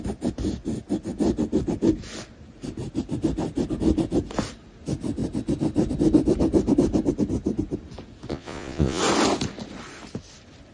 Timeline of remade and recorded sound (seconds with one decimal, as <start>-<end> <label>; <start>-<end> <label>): 0.0-8.3 recorded; 8.3-9.0 remade; 9.0-10.7 recorded